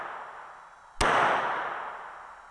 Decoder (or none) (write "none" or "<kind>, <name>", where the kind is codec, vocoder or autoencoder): none